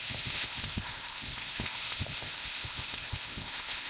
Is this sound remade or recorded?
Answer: remade